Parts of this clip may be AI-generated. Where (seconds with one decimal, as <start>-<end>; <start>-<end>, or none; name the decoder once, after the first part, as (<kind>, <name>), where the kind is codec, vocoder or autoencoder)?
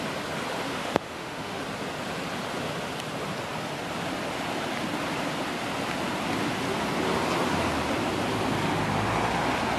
0.7-1.6 (autoencoder, DAC-VAE)